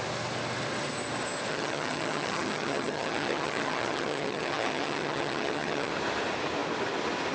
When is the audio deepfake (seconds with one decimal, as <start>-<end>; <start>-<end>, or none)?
1.5-5.9